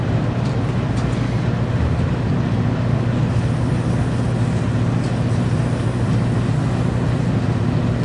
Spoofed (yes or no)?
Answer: no